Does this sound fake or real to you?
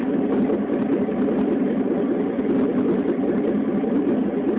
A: real